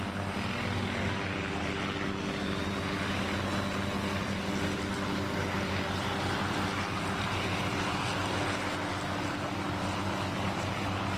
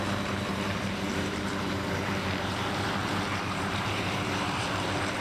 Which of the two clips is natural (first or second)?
first